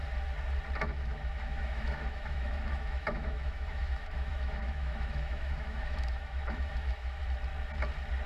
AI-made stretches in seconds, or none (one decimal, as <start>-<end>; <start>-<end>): 0.8-7.2